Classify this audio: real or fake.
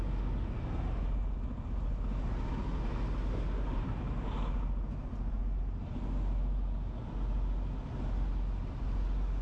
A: real